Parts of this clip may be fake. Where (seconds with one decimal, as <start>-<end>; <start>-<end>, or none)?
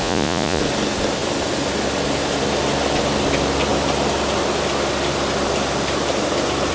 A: 0.0-0.6